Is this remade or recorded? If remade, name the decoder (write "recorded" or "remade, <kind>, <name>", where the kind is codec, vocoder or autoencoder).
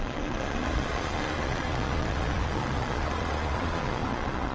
remade, vocoder, Vocos